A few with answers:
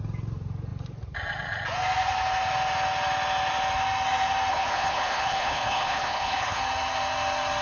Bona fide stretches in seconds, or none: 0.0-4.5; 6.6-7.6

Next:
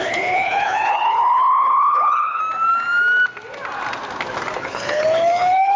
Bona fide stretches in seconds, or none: 2.4-4.6